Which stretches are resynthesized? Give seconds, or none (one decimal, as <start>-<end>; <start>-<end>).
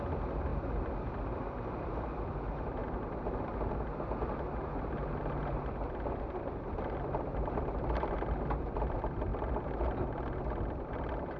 0.0-0.5; 1.1-2.8; 6.2-11.4